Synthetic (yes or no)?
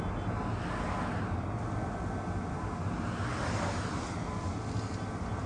no